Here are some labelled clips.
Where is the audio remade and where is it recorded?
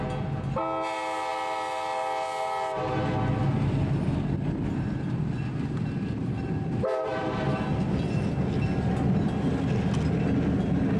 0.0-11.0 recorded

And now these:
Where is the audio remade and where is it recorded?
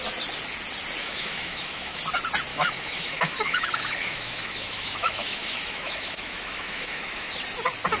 0.0-1.0 recorded; 1.0-2.0 remade; 2.0-2.5 recorded; 2.5-7.3 remade; 7.3-8.0 recorded